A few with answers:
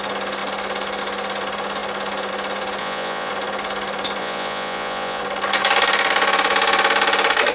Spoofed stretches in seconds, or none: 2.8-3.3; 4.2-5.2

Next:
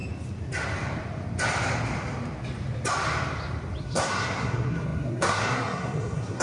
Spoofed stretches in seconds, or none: 3.8-6.4

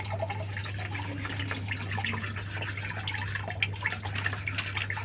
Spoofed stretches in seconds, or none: none

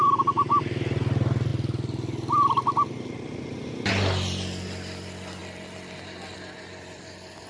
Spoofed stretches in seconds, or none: none